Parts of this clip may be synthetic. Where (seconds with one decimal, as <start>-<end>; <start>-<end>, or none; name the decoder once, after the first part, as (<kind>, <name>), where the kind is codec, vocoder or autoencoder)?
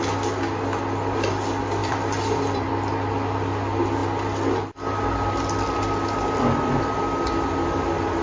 1.8-2.7 (vocoder, BigVGAN v2)